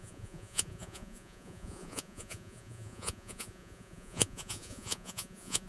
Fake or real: fake